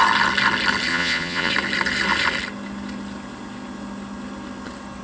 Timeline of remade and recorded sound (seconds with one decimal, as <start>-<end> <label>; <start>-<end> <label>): 0.0-0.9 recorded; 0.9-1.5 remade; 1.5-5.0 recorded